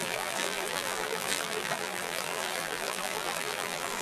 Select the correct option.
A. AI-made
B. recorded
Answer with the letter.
A